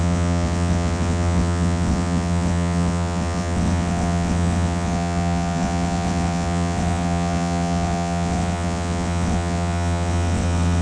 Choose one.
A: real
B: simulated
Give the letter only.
B